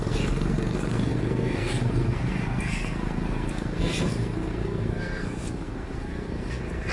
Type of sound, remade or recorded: remade